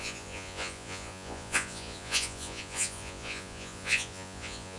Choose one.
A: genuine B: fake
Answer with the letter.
B